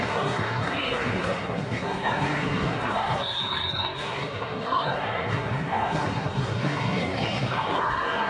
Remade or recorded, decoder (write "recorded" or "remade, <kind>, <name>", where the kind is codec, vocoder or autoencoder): remade, codec, SNAC